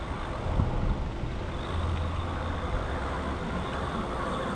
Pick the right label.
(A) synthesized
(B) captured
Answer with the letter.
B